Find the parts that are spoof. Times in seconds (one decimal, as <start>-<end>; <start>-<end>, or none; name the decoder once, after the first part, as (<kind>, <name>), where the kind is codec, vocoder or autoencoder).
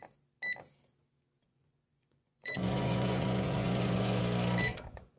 1.4-4.2 (vocoder, Vocos); 4.7-5.2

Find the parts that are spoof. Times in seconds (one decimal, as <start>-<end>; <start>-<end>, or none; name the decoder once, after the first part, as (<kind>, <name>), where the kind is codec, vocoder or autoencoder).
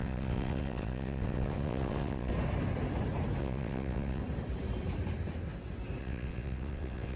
0.0-2.3 (vocoder, WaveNeXt); 3.4-4.2; 6.0-7.2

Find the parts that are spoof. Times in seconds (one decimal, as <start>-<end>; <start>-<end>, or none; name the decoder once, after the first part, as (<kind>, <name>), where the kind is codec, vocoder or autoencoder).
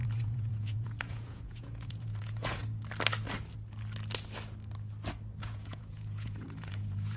0.0-2.6 (vocoder, Vocos); 5.4-7.2